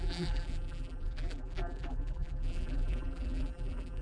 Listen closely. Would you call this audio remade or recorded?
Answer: remade